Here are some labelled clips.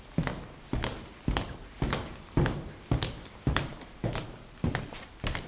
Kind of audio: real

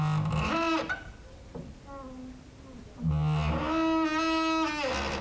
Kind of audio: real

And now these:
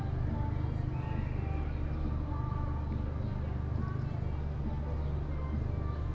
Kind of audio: real